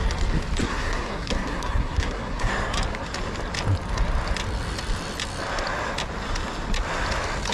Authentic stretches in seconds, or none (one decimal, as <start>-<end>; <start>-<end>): 0.0-0.6; 2.5-7.5